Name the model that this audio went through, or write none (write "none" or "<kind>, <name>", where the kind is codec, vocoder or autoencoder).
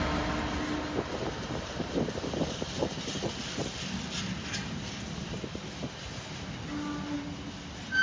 none